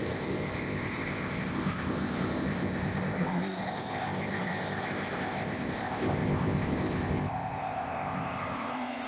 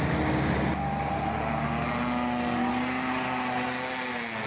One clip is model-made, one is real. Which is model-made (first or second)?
first